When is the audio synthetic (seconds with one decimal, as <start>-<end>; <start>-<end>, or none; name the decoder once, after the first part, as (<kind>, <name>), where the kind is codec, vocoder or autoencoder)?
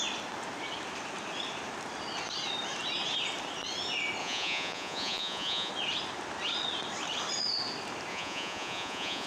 4.2-5.7 (vocoder, Vocos); 8.1-9.3